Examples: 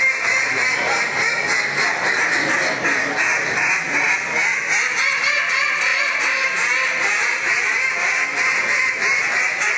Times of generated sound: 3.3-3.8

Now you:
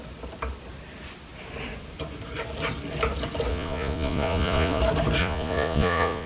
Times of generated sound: 3.5-4.8; 5.2-6.3